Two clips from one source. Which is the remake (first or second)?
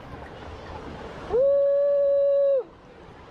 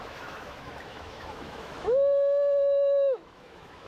second